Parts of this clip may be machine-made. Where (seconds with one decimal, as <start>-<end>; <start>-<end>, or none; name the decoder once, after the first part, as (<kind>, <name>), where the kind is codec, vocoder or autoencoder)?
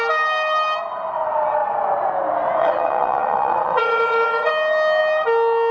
2.6-4.5 (vocoder, WaveNeXt)